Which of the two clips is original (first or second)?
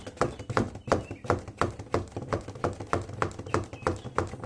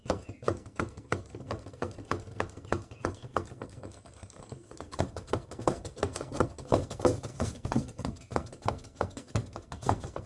first